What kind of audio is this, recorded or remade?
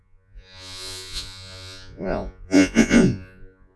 remade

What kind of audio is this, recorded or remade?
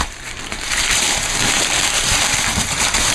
remade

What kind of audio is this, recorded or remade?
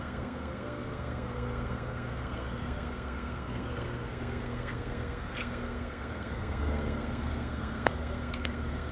remade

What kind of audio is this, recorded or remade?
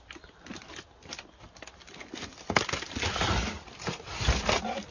recorded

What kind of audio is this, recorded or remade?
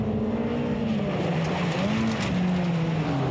recorded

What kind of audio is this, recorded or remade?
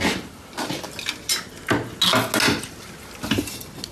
recorded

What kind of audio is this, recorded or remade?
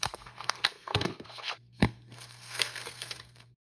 remade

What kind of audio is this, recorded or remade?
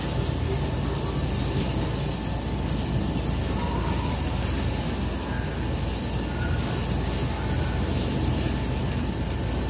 recorded